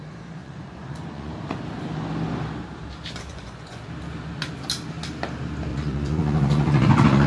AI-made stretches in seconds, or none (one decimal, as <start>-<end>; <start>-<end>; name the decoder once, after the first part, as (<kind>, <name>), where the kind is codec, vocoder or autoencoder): 0.4-1.3 (vocoder, Vocos); 3.3-3.8; 5.7-7.3